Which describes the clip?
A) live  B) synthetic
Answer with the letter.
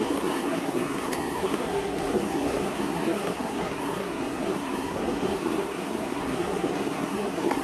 B